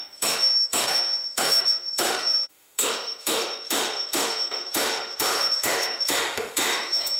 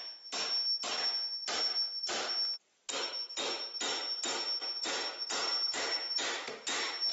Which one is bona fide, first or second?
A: second